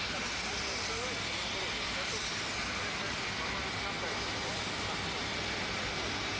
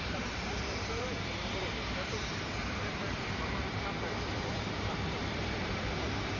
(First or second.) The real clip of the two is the first